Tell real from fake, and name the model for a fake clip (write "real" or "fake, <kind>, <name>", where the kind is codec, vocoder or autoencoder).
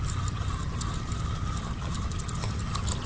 real